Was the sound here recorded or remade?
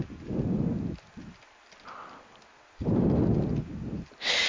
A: recorded